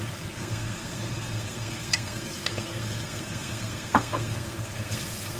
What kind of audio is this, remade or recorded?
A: remade